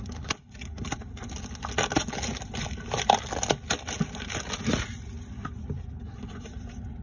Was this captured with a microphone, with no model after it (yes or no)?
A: yes